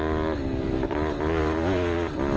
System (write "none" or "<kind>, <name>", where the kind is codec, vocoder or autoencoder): none